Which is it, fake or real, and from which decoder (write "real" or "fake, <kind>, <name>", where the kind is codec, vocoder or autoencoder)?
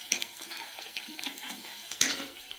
fake, codec, SNAC